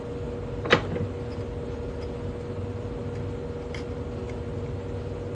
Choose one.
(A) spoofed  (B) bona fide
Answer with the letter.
B